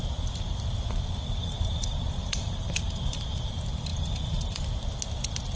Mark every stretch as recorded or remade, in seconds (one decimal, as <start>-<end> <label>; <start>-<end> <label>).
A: 0.0-1.4 recorded; 1.4-3.5 remade; 3.5-3.9 recorded; 3.9-4.6 remade; 4.6-5.6 recorded